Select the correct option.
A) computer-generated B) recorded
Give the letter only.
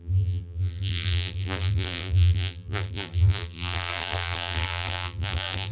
A